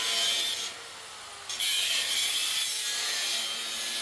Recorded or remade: recorded